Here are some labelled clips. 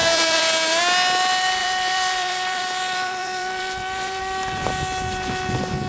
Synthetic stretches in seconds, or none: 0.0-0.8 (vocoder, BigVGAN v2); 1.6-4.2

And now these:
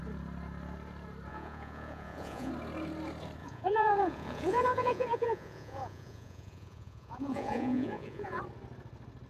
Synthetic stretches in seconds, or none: 1.3-2.5 (vocoder, Vocos); 3.4-8.4